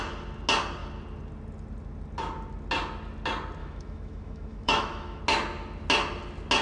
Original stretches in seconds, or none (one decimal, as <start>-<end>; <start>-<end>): 0.0-3.6; 5.2-6.6